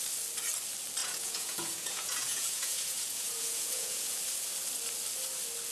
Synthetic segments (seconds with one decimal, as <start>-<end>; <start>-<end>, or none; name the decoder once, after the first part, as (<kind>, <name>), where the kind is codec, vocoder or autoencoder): 1.0-4.2 (vocoder, Vocos)